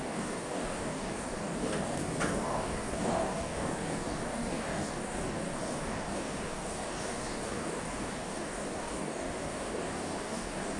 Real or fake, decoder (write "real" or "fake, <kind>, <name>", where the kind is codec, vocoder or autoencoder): fake, codec, DAC